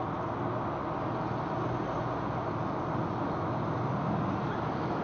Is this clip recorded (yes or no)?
yes